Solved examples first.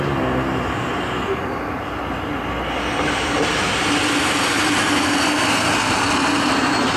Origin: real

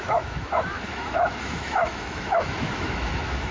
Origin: fake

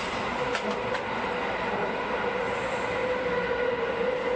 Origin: real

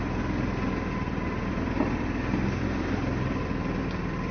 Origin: real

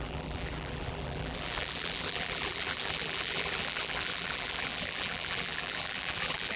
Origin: fake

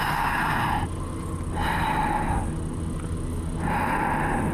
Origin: real